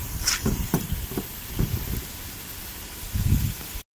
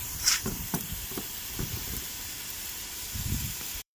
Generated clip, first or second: second